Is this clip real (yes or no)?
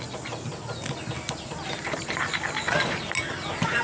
yes